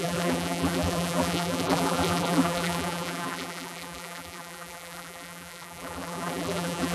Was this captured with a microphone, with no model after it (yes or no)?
no